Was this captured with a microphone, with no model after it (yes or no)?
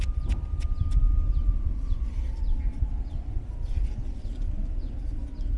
yes